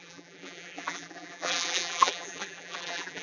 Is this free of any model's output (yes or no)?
no